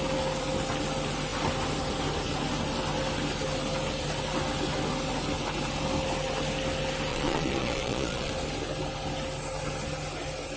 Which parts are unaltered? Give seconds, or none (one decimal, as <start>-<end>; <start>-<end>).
0.0-7.1; 8.3-10.6